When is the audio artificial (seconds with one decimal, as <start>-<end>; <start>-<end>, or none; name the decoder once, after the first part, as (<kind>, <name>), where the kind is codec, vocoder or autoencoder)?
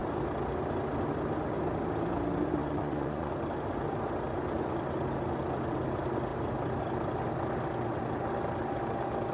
2.6-3.3 (vocoder, Vocos)